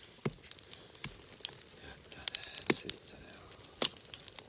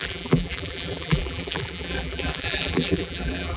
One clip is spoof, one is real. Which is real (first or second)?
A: first